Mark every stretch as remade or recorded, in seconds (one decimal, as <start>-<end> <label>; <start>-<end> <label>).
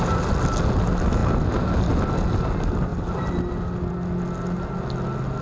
0.0-5.4 recorded